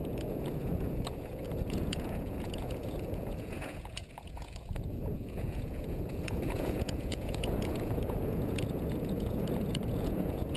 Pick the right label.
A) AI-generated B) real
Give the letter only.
A